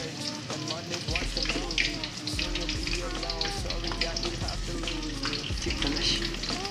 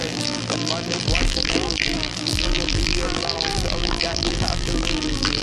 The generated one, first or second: second